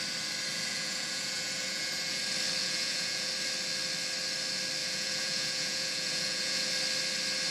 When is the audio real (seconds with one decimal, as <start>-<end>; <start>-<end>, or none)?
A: 0.0-0.5; 2.2-2.6; 3.3-4.8; 6.7-7.5